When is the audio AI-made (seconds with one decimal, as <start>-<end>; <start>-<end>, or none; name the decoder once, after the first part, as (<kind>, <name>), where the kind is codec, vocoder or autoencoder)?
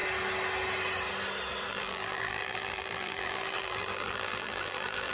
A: 1.7-5.1 (vocoder, BigVGAN v2)